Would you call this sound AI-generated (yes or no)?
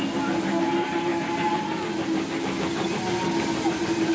no